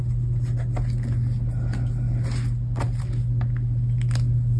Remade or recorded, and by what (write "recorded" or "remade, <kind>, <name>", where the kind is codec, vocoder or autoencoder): recorded